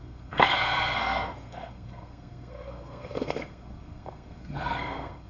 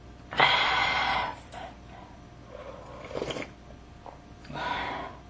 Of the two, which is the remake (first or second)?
first